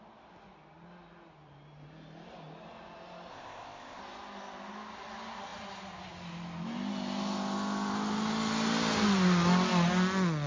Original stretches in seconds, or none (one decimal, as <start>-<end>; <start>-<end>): 0.0-3.3; 4.0-10.5